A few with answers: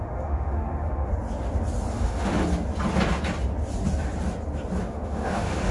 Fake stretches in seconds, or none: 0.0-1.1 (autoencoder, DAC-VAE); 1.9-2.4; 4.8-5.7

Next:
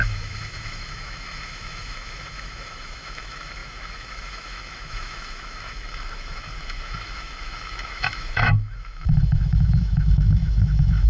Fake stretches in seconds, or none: 0.0-11.1 (autoencoder, DAC-VAE)

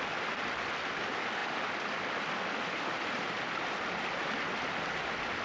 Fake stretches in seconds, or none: none

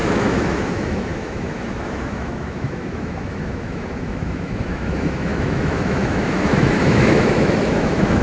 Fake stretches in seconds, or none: 0.0-8.2 (autoencoder, DAC-VAE)

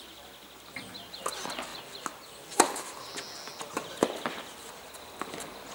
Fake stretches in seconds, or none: none

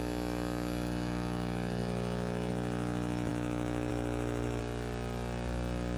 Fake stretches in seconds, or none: 0.0-4.6 (autoencoder, DAC-VAE)

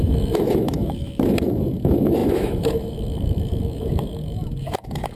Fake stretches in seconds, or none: 0.0-5.1 (autoencoder, DAC-VAE)

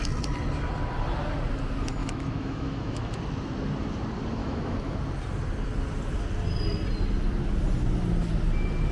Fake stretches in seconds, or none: 2.0-3.2 (autoencoder, DAC-VAE); 4.4-5.0